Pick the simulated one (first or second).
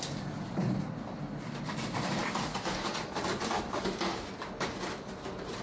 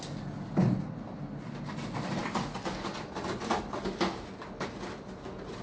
first